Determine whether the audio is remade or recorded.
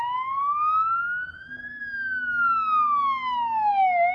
recorded